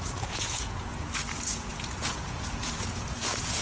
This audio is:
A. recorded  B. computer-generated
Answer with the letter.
B